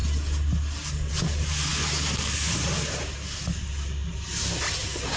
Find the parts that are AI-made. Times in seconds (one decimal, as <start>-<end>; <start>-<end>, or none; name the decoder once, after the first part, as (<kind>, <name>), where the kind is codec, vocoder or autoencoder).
none